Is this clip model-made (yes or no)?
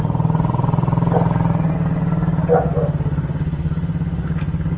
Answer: no